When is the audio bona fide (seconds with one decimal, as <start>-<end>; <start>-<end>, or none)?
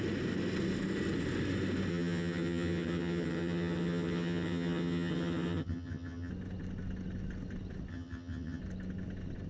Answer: 0.0-1.9; 6.3-7.9; 8.6-9.5